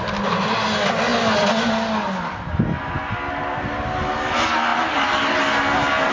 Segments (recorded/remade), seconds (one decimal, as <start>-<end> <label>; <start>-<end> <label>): 0.0-6.1 recorded